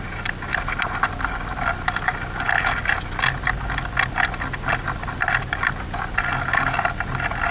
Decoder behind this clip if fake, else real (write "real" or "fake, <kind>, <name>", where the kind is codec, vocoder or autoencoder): real